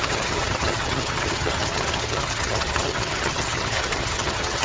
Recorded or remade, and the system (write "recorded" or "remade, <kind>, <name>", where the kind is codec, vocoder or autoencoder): remade, vocoder, HiFi-GAN